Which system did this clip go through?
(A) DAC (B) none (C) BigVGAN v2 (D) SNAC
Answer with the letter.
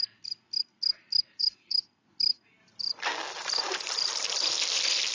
B